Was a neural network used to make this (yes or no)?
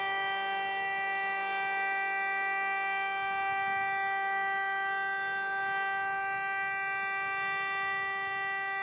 no